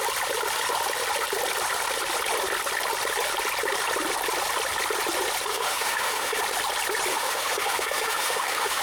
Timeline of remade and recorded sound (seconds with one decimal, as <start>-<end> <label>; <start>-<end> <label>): 0.0-5.5 recorded; 5.5-6.4 remade; 6.4-7.1 recorded; 7.1-8.8 remade